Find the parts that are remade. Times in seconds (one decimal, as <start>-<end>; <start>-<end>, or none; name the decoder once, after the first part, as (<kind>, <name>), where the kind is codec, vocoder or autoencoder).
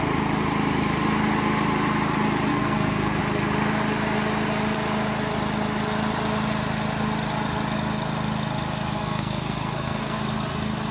2.5-3.2 (codec, SNAC); 9.0-10.2